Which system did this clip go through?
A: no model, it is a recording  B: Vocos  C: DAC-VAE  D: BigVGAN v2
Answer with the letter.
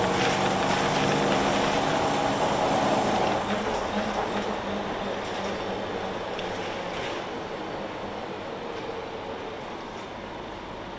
A